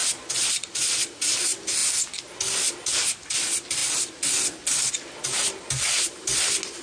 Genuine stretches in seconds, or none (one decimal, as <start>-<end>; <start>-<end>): 0.0-6.8